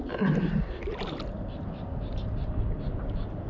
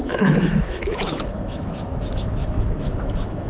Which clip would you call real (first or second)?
first